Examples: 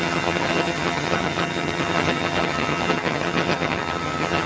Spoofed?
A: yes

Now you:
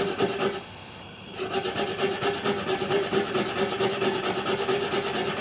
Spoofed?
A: no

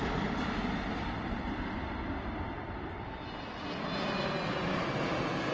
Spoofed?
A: no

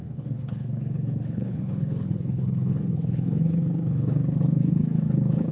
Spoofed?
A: yes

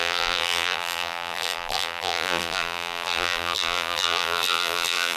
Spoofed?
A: yes